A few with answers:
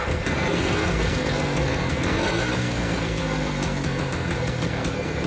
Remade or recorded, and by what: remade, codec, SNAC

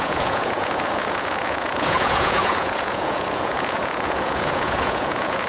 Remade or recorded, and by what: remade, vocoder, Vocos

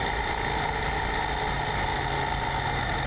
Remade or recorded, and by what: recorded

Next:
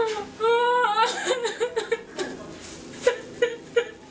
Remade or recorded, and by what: recorded